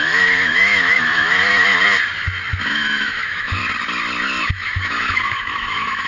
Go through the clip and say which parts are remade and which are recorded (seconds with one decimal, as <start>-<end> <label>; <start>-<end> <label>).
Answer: 0.0-1.7 remade; 1.7-2.5 recorded; 2.5-3.6 remade; 3.6-4.4 recorded; 4.4-6.1 remade